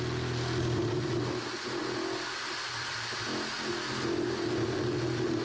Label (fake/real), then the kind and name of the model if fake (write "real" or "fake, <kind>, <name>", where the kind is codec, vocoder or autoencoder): real